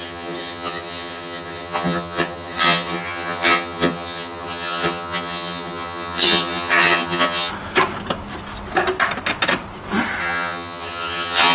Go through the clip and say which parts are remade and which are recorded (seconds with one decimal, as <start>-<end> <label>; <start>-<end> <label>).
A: 0.0-7.5 remade; 7.5-10.2 recorded; 10.2-11.5 remade